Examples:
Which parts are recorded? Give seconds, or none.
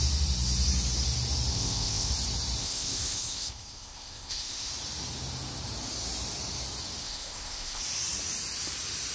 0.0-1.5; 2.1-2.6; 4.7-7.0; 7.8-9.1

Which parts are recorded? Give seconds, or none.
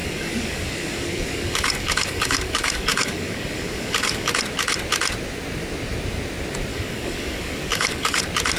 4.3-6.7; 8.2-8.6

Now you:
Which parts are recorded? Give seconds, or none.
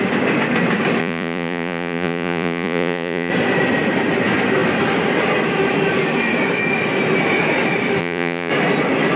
0.0-1.0; 3.3-8.0; 8.5-9.2